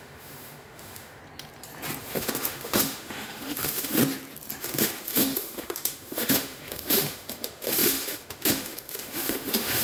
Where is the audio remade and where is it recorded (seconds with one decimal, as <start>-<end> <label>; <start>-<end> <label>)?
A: 0.0-1.2 remade; 1.2-2.0 recorded; 2.0-4.0 remade; 4.0-4.6 recorded; 4.6-9.8 remade